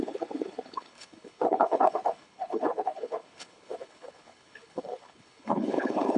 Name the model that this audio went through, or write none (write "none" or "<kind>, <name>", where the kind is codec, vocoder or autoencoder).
codec, HILCodec